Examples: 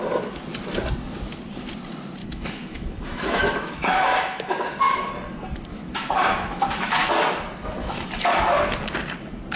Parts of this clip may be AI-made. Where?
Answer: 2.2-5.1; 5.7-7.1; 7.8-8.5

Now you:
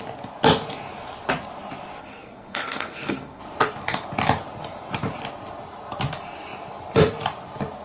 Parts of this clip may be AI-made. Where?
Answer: 2.0-3.4

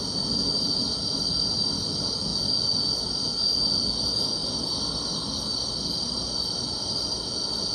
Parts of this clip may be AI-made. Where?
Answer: none

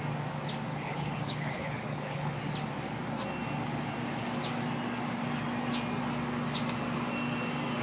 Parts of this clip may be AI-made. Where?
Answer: 0.7-2.3

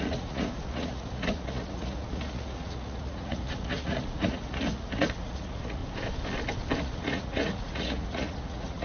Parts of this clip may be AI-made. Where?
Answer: 0.0-5.8; 6.8-8.8